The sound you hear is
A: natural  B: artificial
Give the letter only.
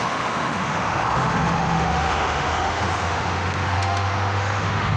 B